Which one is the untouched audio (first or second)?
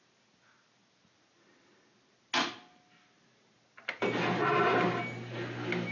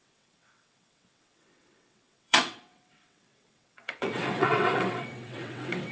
first